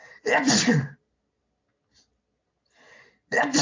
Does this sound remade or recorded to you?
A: recorded